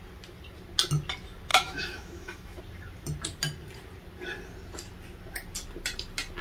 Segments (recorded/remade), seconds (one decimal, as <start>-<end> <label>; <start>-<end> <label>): 0.0-1.5 recorded; 1.5-2.6 remade; 2.6-6.4 recorded